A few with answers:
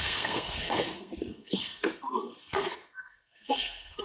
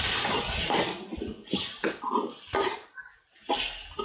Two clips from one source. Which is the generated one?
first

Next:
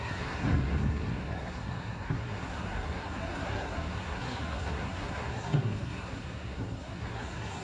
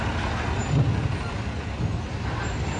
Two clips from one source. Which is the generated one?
first